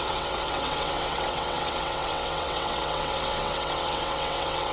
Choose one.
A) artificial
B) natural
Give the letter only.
A